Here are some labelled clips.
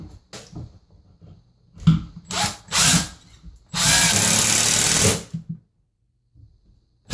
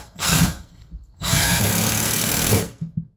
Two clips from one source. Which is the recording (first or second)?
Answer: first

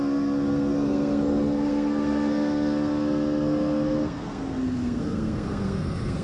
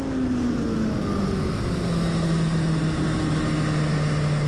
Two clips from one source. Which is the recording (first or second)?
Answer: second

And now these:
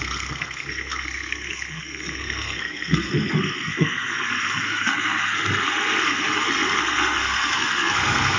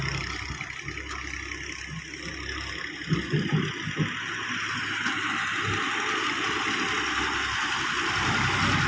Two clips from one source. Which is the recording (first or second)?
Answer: second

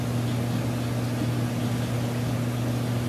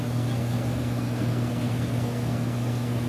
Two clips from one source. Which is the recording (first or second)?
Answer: first